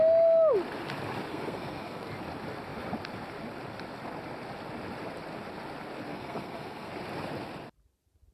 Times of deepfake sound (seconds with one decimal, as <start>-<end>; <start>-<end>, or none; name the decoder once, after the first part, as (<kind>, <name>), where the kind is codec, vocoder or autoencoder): 1.3-2.1 (codec, SNAC); 6.1-6.9